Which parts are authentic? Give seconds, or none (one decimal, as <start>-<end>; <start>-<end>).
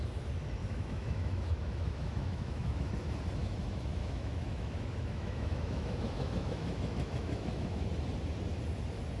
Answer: 0.0-0.6; 2.9-3.4; 7.9-9.2